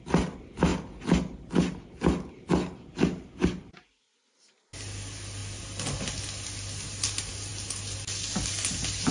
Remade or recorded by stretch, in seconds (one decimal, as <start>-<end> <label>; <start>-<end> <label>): 0.0-9.1 recorded